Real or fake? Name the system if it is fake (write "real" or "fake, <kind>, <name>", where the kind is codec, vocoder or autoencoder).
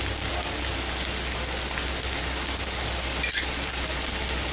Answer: real